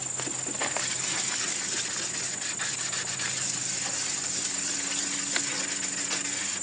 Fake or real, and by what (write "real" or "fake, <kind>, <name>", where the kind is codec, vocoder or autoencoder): real